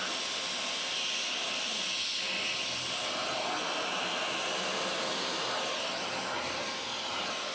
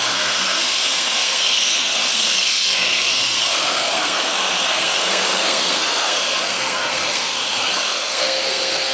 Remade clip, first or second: second